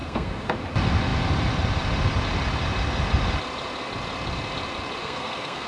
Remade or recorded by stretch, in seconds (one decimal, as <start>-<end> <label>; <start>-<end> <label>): 0.0-0.5 remade; 0.5-5.0 recorded; 5.0-5.7 remade